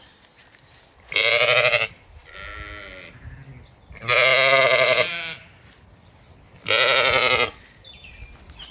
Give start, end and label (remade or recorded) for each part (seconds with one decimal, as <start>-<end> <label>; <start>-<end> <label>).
0.0-8.7 recorded